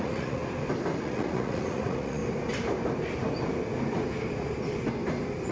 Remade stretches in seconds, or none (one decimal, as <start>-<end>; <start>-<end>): 0.0-0.4; 1.0-2.2